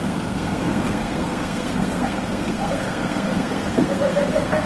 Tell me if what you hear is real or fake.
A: fake